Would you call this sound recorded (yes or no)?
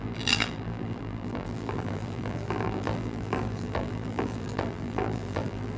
no